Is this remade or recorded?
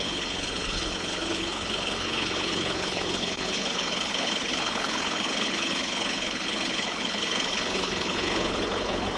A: remade